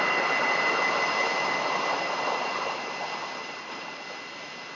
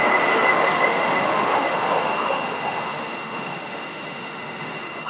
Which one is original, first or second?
first